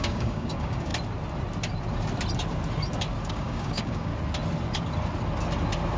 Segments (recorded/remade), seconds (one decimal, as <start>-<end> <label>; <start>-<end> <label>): 0.0-0.9 remade; 0.9-3.3 recorded; 3.3-4.1 remade; 4.1-6.0 recorded